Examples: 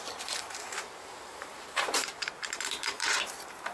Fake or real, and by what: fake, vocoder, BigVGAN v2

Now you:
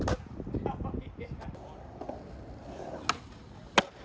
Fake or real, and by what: real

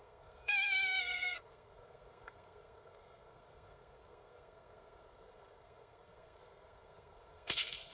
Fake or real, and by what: fake, codec, SNAC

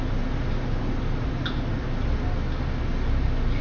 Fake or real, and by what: real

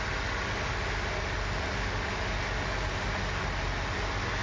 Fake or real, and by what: real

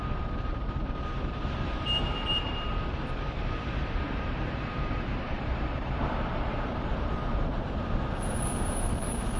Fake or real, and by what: fake, vocoder, BigVGAN v2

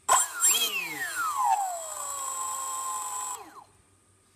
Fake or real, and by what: real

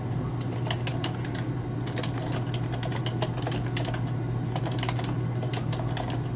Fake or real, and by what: real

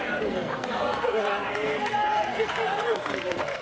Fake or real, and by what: fake, codec, SNAC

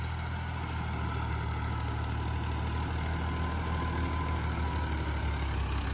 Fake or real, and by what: real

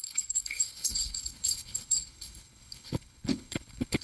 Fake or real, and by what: fake, codec, HILCodec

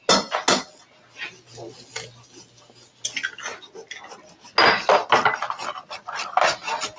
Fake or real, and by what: real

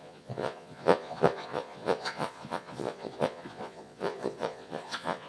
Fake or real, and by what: fake, vocoder, Vocos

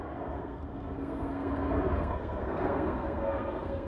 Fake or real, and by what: fake, codec, SNAC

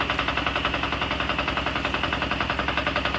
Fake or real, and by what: real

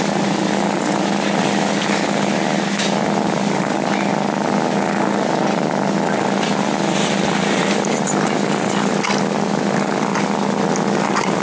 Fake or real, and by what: real